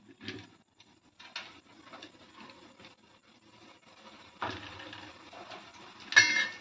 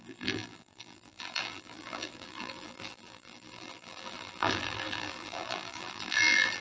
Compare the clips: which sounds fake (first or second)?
second